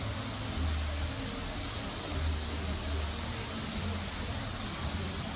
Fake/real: real